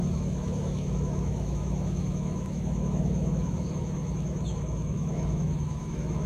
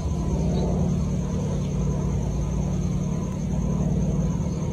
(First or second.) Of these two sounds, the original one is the second